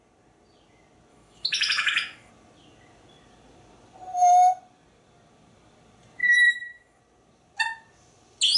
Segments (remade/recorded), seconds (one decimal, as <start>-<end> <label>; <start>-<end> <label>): 0.0-1.1 recorded; 1.1-2.3 remade; 2.3-6.2 recorded; 6.2-7.0 remade; 7.0-8.6 recorded